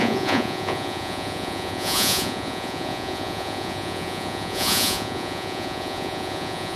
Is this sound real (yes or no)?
no